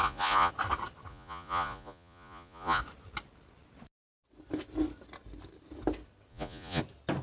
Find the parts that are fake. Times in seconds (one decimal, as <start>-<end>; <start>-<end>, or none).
0.0-0.5; 1.1-2.8; 6.3-6.8